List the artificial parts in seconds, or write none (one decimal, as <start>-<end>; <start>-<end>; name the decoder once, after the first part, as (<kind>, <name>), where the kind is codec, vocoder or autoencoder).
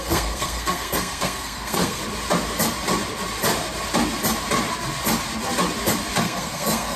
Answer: 0.0-2.0 (codec, SNAC); 6.2-7.0